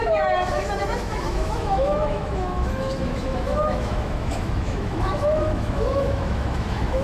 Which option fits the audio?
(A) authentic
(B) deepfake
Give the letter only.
B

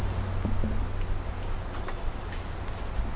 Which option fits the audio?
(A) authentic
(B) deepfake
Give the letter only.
A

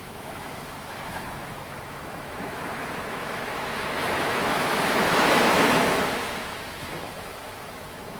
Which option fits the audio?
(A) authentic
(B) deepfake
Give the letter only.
B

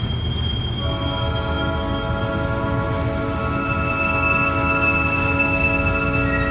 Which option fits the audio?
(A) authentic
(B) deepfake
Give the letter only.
A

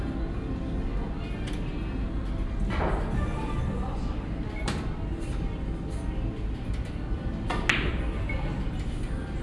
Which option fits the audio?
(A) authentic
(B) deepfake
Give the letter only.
A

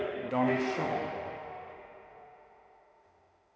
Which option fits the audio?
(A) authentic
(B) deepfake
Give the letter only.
B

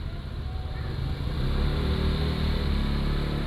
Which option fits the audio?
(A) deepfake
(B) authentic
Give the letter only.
B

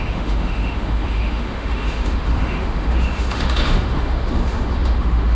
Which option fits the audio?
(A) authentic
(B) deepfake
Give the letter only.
B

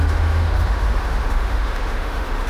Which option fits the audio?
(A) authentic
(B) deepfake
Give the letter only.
B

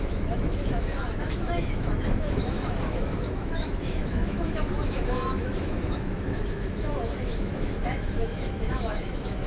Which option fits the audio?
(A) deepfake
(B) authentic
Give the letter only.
A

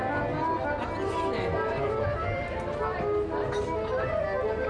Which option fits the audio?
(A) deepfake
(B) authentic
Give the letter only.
B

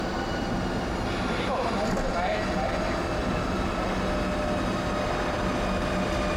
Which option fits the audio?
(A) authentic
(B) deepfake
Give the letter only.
A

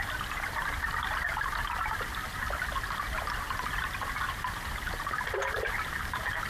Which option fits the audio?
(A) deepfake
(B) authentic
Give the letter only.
B